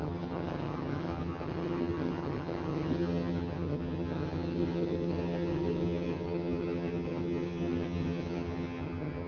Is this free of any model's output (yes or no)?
no